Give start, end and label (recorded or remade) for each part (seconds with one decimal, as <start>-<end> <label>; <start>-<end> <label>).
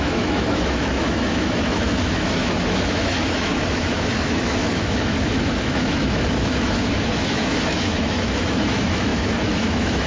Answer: 0.0-10.1 remade